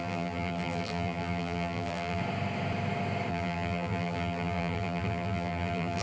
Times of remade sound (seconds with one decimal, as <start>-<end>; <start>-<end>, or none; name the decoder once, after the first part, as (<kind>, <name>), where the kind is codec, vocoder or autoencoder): 0.0-2.2 (vocoder, BigVGAN v2); 3.3-6.0